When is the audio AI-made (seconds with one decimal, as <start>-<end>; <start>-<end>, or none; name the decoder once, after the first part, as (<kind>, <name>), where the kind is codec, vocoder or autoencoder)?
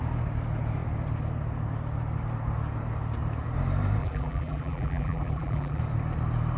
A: 4.0-5.8 (vocoder, BigVGAN v2)